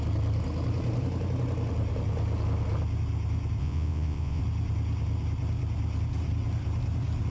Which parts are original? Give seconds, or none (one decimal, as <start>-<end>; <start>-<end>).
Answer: 0.0-3.6; 4.4-7.3